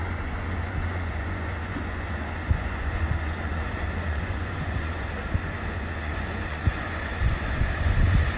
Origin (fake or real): fake